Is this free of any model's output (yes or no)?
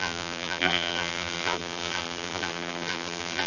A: no